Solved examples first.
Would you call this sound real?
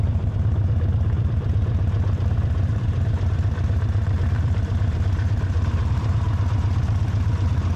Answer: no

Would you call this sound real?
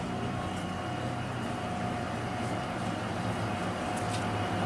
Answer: no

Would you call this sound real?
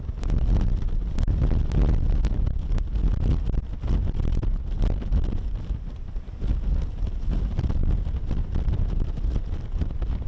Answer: yes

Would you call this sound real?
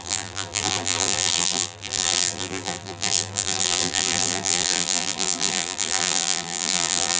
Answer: no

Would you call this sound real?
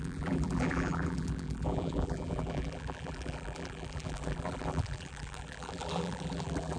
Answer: no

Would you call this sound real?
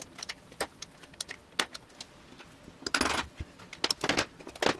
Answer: yes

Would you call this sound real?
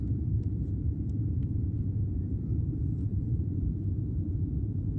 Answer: no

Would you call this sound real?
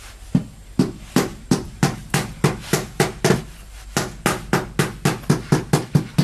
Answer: yes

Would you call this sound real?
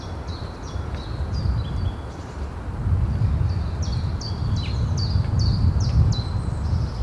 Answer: yes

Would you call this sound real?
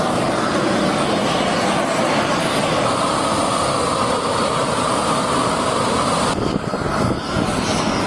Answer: yes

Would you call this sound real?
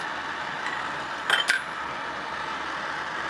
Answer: yes